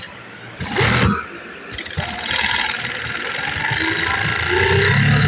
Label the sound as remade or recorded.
recorded